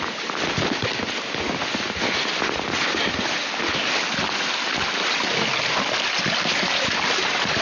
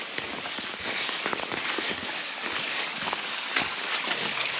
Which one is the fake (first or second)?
second